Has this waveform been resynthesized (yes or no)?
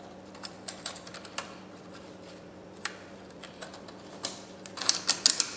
no